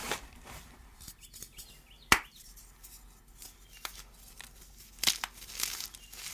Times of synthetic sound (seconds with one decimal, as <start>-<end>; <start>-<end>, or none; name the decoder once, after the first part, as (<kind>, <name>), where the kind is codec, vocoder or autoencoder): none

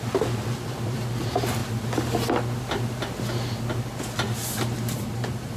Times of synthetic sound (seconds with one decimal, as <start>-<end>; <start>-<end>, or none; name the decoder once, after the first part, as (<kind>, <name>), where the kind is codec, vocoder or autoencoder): 0.0-1.6 (vocoder, BigVGAN v2); 5.0-5.6

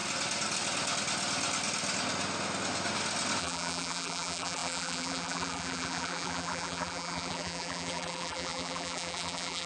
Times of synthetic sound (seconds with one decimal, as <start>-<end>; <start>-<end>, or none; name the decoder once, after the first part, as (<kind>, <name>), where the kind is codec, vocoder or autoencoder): 3.4-9.7 (vocoder, BigVGAN v2)

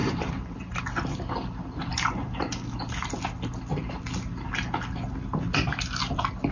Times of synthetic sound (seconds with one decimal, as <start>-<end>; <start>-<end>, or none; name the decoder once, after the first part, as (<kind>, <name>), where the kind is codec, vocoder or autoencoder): 0.0-0.8 (vocoder, BigVGAN v2)